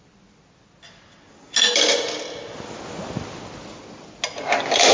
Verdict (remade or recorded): recorded